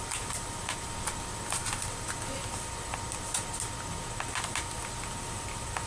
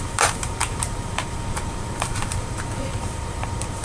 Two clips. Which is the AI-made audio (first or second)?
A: second